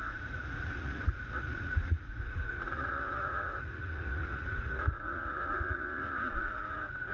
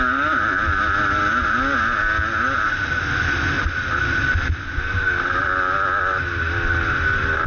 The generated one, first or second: first